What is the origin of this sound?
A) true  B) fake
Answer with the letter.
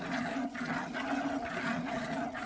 A